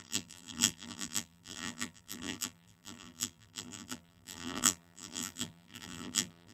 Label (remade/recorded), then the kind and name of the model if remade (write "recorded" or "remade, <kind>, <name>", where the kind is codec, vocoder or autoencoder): remade, vocoder, BigVGAN v2